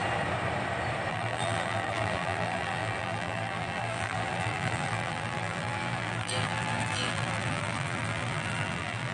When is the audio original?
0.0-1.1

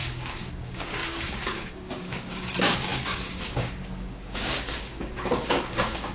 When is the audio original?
none

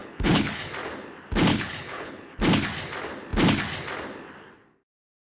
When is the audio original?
0.7-1.5; 2.4-5.2

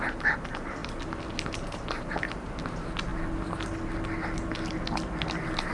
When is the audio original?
0.0-5.7

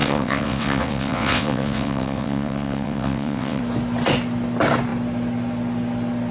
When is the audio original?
3.6-6.3

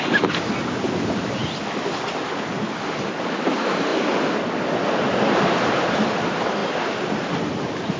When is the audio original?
0.0-8.0

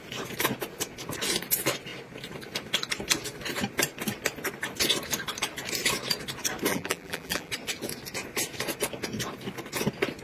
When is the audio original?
0.0-6.7; 7.5-10.2

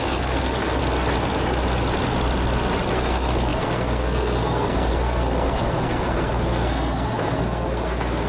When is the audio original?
0.8-2.9